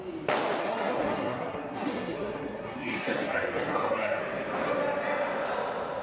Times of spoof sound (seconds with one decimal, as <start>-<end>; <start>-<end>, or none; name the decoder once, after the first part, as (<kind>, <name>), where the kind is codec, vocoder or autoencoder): 0.6-4.2 (codec, SNAC)